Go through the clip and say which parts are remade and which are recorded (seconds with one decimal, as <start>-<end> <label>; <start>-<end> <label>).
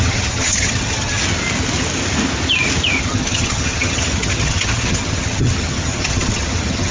0.0-1.2 remade; 1.2-3.0 recorded; 3.0-6.9 remade